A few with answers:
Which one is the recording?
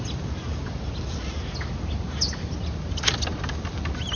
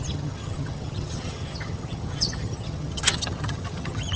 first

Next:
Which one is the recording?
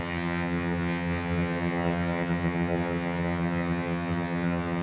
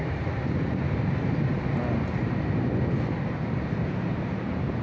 second